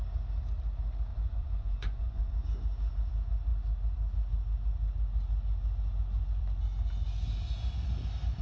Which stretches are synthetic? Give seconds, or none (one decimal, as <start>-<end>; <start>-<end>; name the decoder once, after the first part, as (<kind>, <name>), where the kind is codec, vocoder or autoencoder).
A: 1.1-2.4 (vocoder, Vocos)